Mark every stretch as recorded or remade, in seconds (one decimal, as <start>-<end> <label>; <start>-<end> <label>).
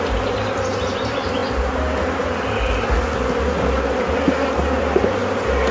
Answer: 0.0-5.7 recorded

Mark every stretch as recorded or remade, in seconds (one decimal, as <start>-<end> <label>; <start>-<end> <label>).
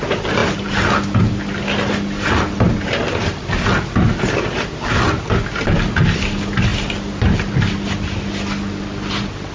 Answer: 0.0-9.5 recorded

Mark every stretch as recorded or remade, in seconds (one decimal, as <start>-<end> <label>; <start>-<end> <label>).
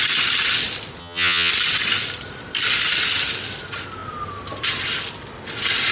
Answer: 0.0-1.0 recorded; 1.0-1.5 remade; 1.5-5.9 recorded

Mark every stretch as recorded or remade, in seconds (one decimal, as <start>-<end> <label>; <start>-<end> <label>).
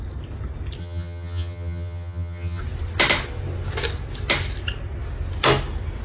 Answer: 0.0-0.8 recorded; 0.8-2.6 remade; 2.6-6.0 recorded